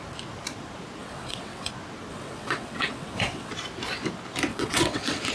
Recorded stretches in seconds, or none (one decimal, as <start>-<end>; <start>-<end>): 0.0-1.0; 1.7-2.1; 3.5-4.5